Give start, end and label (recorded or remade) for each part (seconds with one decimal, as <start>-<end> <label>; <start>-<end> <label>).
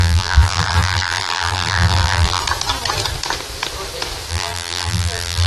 0.0-2.4 remade; 2.4-4.3 recorded; 4.3-5.5 remade